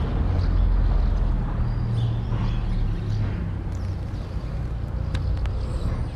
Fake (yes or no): no